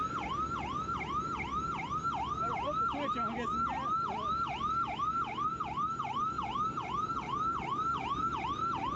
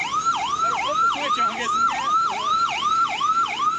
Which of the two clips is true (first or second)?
first